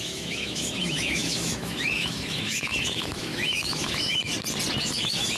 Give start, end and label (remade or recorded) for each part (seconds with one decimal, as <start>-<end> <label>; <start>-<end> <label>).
0.0-4.3 remade; 4.3-4.8 recorded; 4.8-5.4 remade

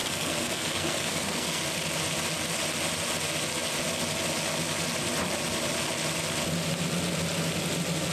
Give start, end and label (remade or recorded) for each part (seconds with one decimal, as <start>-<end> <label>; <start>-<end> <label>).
0.0-1.6 remade; 1.6-8.1 recorded